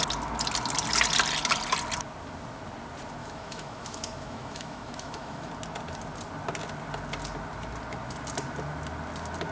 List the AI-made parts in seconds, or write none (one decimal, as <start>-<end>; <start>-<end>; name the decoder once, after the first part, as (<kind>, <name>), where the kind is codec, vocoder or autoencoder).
3.2-5.5 (autoencoder, DAC-VAE)